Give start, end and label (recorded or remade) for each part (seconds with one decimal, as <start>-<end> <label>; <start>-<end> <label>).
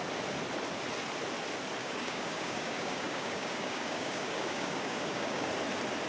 0.0-1.8 recorded; 1.8-5.5 remade; 5.5-6.1 recorded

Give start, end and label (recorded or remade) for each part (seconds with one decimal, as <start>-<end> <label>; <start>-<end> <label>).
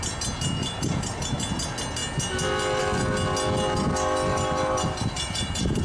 0.0-0.6 recorded; 0.6-1.4 remade; 1.4-4.3 recorded; 4.3-5.8 remade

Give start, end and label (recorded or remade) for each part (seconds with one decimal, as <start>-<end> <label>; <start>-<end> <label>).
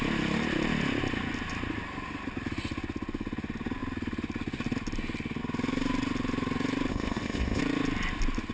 0.0-6.9 recorded; 6.9-7.6 remade; 7.6-8.5 recorded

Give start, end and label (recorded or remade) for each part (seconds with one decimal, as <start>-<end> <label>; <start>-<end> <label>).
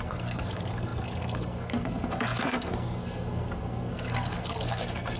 0.0-5.2 remade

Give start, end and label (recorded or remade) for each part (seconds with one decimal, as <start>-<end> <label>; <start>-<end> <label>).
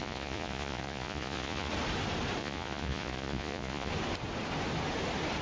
0.0-1.7 remade; 1.7-2.4 recorded; 2.4-3.9 remade; 3.9-5.4 recorded